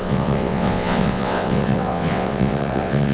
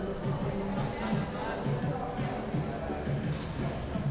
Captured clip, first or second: second